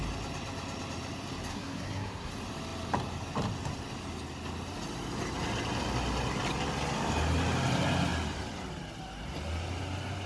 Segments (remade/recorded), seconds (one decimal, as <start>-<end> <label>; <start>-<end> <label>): 0.0-1.5 recorded; 1.5-2.3 remade; 2.3-10.3 recorded